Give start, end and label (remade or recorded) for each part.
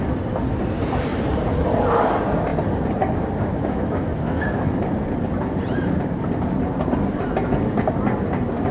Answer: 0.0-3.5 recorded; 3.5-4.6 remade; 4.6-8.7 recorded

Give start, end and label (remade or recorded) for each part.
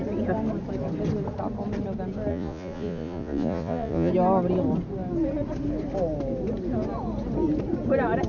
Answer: 0.0-2.3 recorded; 2.3-4.1 remade; 4.1-8.3 recorded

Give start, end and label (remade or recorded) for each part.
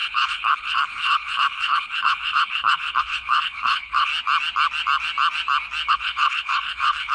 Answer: 0.0-4.1 remade; 4.1-5.9 recorded; 5.9-7.1 remade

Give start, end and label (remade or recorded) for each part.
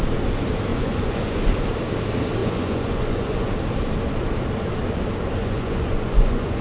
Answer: 0.0-0.7 recorded; 0.7-1.4 remade; 1.4-2.4 recorded; 2.4-3.5 remade; 3.5-5.4 recorded; 5.4-6.6 remade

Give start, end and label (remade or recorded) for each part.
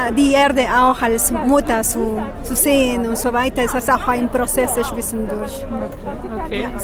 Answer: 0.0-5.2 recorded; 5.2-6.8 remade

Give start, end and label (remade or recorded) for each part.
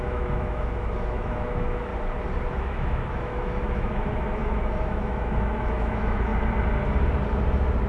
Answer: 0.0-1.9 remade; 1.9-2.5 recorded; 2.5-6.3 remade; 6.3-7.9 recorded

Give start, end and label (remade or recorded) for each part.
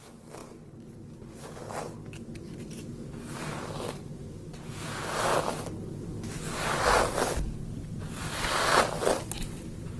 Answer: 0.0-10.0 recorded